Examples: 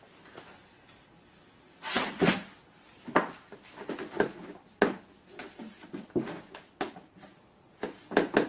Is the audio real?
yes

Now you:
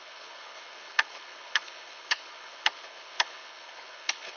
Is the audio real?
no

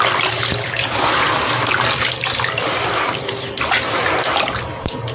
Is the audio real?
yes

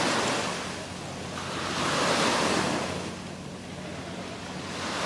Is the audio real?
yes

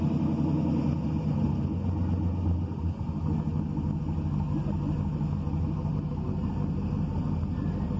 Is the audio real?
yes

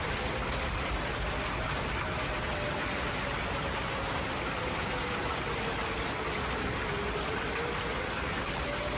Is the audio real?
yes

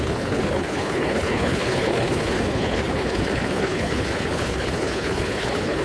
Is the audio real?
no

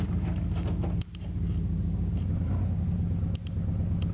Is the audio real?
yes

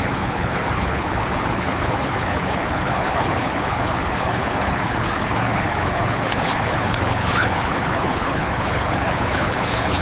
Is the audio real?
no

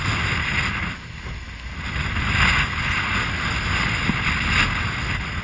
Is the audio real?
yes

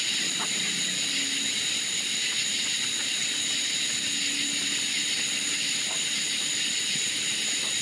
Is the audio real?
yes